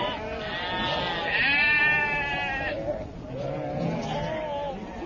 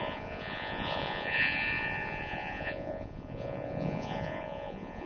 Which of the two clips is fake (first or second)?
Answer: second